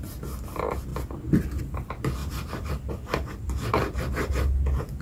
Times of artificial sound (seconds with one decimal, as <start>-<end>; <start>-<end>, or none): 0.9-1.6